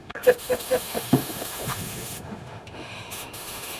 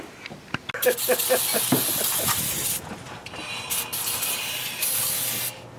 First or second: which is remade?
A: first